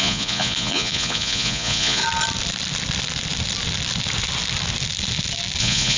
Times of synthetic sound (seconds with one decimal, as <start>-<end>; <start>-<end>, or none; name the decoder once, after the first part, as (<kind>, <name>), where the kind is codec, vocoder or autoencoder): 0.0-2.0 (vocoder, Vocos); 5.6-6.0